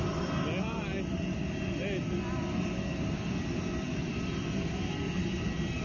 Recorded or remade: recorded